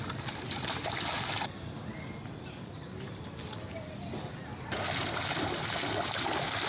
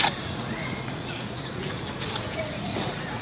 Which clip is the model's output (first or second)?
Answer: second